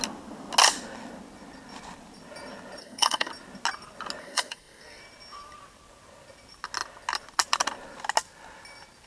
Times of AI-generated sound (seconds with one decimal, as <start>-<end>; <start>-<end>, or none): 2.8-3.3; 4.2-5.0

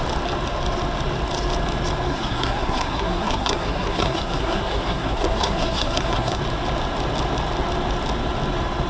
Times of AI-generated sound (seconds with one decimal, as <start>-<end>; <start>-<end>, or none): 2.1-6.4

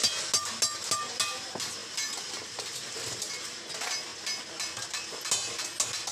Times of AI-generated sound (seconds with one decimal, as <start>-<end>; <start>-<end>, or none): none

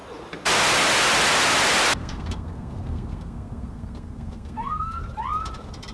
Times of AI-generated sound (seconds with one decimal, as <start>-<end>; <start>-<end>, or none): 2.0-5.0

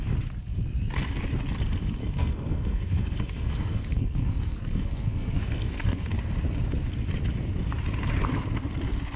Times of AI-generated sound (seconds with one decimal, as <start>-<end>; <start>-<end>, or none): 2.0-6.1

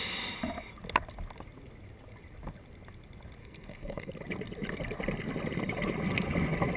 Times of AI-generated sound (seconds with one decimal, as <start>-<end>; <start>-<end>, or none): 3.4-4.1

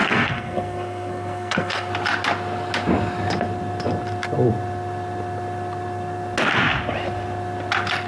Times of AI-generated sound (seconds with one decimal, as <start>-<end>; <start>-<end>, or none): 0.0-1.9